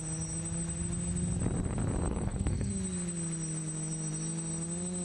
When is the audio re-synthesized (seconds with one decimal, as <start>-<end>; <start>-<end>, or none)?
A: 2.0-2.7